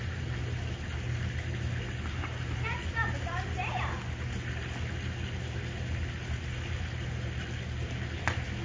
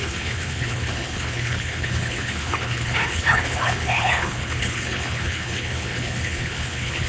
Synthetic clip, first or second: second